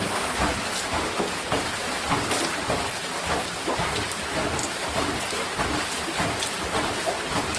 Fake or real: fake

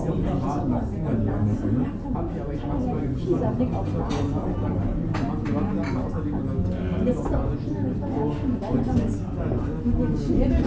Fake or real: real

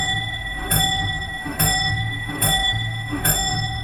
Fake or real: fake